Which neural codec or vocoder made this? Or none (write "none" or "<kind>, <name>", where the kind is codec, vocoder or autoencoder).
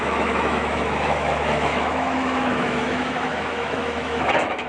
autoencoder, DAC-VAE